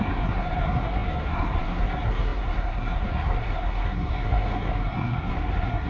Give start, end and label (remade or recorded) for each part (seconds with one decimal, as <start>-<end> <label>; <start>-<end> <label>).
0.0-5.9 remade